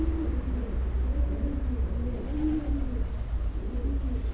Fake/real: real